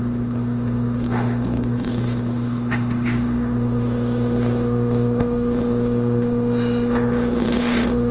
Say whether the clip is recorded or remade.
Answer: remade